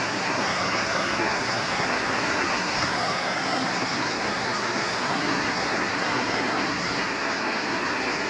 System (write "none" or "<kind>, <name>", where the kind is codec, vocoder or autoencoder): codec, SNAC